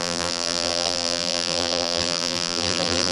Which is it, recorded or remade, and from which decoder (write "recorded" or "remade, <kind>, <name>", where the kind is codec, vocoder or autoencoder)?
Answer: remade, vocoder, BigVGAN v2